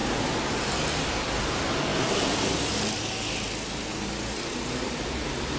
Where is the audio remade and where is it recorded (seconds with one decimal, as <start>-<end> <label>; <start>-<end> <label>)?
0.0-5.6 recorded